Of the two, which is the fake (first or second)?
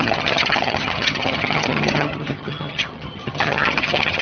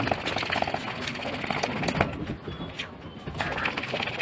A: first